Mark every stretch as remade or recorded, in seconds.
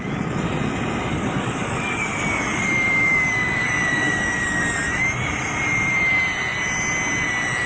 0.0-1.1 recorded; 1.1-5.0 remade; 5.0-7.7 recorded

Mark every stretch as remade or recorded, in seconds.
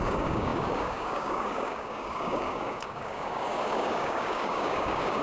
0.0-5.2 remade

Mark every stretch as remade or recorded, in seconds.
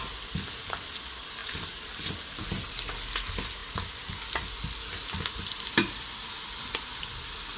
0.0-7.6 recorded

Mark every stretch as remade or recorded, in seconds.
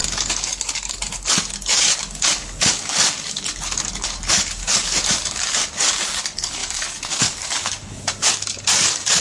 0.0-9.2 remade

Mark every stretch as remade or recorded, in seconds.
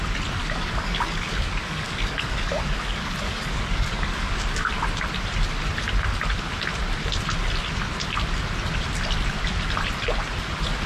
0.0-0.4 recorded; 0.4-4.7 remade; 4.7-10.9 recorded